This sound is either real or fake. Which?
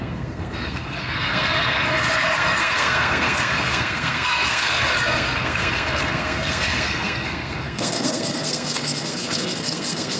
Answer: fake